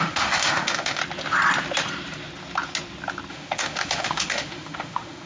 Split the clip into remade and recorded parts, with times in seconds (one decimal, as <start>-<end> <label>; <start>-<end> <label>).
0.0-1.0 remade; 1.0-3.3 recorded; 3.3-5.3 remade